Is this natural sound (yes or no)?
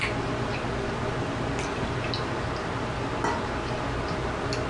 yes